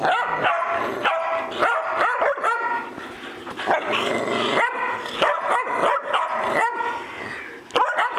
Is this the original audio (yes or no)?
yes